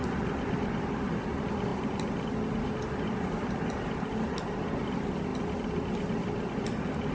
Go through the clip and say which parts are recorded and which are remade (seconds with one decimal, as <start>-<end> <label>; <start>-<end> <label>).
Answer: 0.0-7.1 recorded